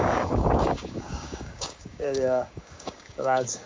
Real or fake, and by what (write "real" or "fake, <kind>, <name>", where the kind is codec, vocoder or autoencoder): fake, codec, DAC